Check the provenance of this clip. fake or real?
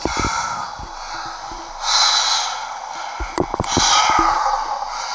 real